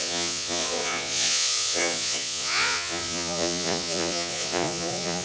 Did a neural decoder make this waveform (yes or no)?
yes